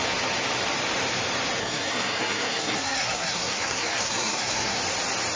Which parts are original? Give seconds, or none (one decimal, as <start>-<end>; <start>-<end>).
0.0-1.6; 4.8-5.4